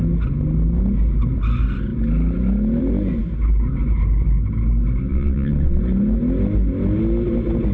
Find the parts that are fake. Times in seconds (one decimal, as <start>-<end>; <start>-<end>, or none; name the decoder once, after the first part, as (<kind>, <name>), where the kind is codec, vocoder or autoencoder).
5.1-5.8 (vocoder, WaveNeXt)